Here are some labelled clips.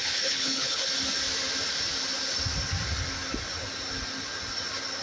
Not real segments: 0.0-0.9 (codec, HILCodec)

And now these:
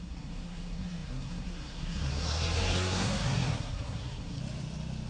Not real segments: 0.0-4.4 (codec, SNAC)

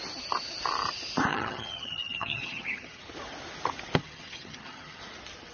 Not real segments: 1.3-3.0 (vocoder, HiFi-GAN); 4.0-5.0

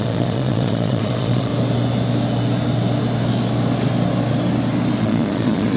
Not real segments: 0.0-1.5 (vocoder, Vocos); 5.0-5.8

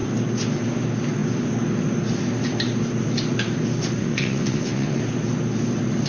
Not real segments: 4.0-5.0 (vocoder, WaveNeXt)